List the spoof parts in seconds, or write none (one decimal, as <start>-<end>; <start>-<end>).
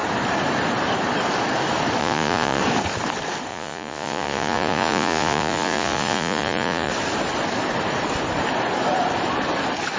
2.0-2.6; 3.5-6.9